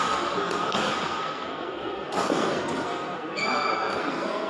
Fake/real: fake